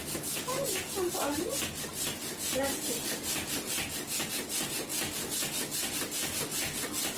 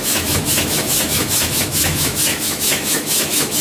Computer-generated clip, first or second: second